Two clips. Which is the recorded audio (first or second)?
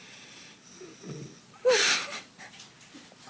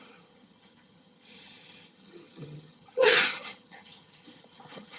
first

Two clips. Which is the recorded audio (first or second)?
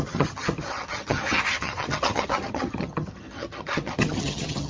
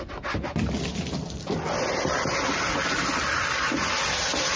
second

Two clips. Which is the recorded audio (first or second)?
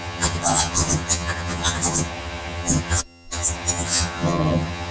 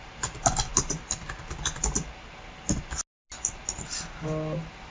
second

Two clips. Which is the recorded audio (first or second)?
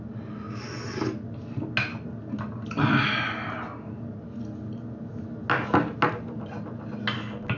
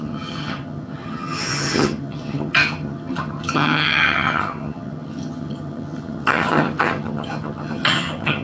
first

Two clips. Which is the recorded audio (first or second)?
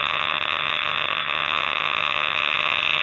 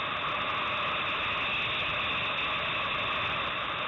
second